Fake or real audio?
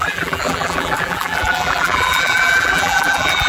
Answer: fake